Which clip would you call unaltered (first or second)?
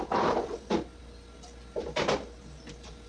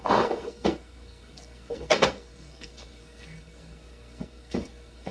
first